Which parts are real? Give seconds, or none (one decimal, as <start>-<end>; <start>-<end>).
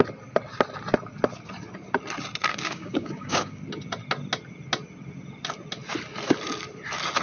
0.0-2.5; 3.6-7.2